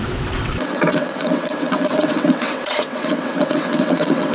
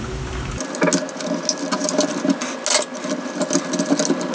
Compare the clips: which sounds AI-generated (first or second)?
first